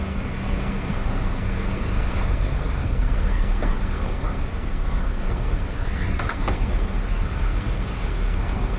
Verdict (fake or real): fake